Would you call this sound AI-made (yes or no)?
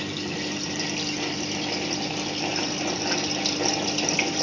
no